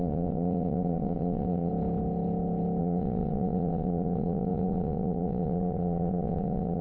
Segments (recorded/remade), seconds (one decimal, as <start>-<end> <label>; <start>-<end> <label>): 0.0-1.7 remade; 1.7-2.8 recorded; 2.8-6.8 remade